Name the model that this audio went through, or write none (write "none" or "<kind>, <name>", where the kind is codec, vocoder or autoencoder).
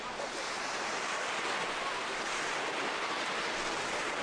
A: none